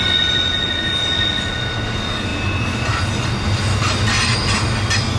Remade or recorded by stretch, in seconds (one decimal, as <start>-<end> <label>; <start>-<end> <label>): 0.0-5.2 recorded